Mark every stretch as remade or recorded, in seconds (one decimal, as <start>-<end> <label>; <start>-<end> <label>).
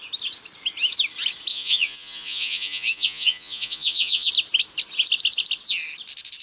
0.0-1.5 recorded; 1.5-4.3 remade; 4.3-6.4 recorded